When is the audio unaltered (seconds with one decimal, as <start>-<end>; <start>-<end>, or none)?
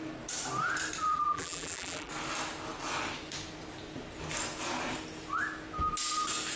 0.0-1.0; 2.1-6.6